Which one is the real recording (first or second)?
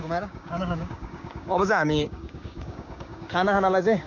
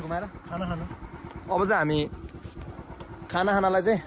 second